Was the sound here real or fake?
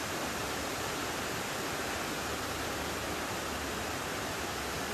real